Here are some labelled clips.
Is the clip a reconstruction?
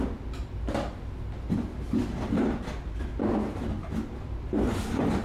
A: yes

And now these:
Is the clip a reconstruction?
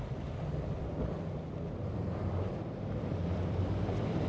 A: yes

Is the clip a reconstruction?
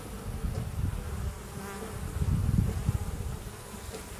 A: no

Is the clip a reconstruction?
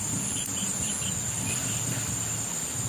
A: no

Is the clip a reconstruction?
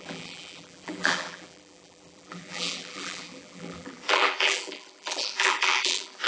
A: yes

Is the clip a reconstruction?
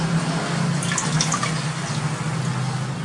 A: no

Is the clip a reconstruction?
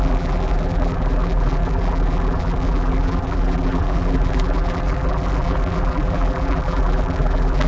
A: yes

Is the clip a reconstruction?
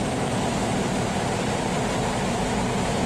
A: no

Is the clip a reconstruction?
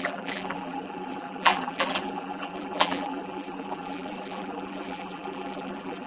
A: yes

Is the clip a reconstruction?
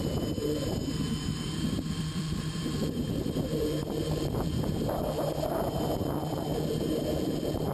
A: yes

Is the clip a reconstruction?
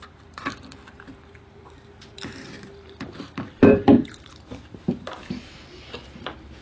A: yes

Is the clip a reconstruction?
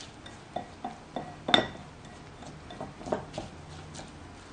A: no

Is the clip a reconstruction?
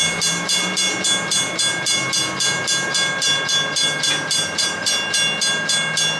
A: no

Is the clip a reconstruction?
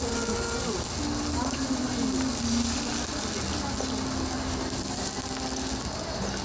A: no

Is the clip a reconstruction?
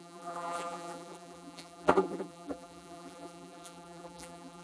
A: yes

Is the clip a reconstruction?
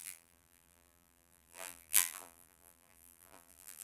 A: yes